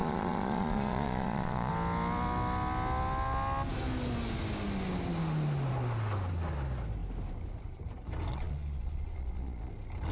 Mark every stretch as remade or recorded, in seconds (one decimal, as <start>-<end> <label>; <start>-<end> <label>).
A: 0.0-1.7 remade; 1.7-8.3 recorded; 8.3-9.7 remade; 9.7-10.1 recorded